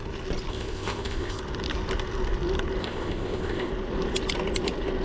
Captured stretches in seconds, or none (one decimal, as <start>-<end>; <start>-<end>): 0.0-0.5; 1.4-2.8; 3.7-5.0